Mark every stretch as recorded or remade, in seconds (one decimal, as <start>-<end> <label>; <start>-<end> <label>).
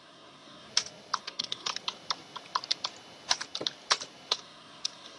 0.0-0.7 remade; 0.7-1.2 recorded; 1.2-1.7 remade; 1.7-4.3 recorded; 4.3-5.2 remade